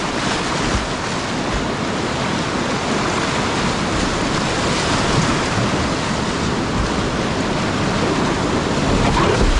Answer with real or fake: real